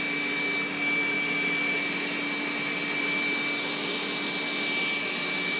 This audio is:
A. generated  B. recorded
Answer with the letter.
B